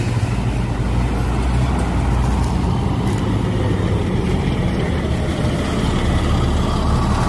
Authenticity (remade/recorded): recorded